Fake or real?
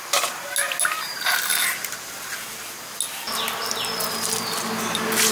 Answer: real